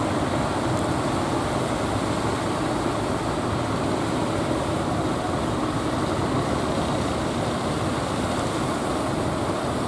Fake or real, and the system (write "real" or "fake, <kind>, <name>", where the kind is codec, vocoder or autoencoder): real